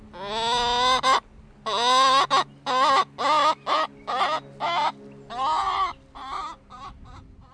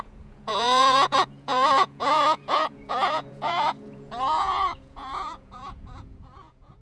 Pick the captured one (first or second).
first